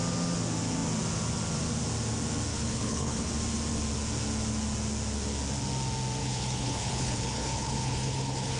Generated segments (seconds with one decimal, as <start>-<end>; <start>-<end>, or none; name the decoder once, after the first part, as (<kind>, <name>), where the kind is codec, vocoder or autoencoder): 2.5-3.3 (codec, HILCodec); 6.2-8.6